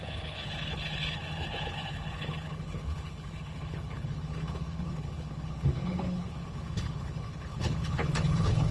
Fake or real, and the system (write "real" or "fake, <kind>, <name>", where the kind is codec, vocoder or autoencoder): fake, codec, HILCodec